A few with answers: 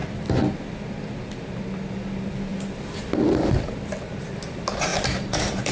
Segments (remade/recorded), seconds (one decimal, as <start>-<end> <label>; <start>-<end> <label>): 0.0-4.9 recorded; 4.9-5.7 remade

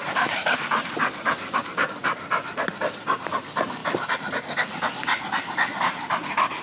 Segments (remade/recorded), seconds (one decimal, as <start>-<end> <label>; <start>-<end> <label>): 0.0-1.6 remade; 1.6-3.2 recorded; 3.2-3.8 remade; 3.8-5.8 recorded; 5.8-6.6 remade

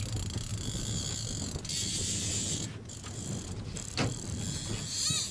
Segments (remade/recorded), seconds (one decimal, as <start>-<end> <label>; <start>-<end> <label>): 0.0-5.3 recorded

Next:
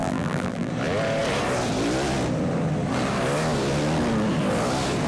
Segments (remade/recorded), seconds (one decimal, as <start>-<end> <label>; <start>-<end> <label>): 0.0-0.7 remade; 0.7-5.1 recorded

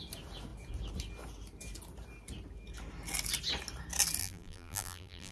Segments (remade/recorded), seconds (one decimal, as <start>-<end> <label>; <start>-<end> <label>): 0.0-4.2 recorded; 4.2-5.3 remade

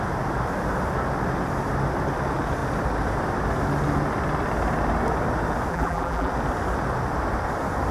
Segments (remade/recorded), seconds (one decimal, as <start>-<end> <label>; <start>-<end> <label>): 0.0-5.7 recorded; 5.7-6.3 remade; 6.3-7.9 recorded